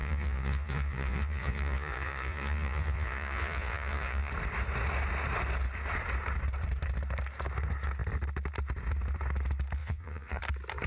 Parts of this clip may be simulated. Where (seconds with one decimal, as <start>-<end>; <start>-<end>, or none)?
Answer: 0.0-4.3; 9.8-10.4